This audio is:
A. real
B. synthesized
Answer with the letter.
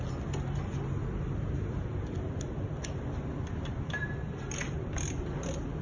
A